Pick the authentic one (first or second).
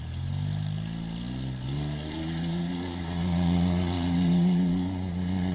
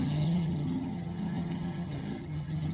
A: first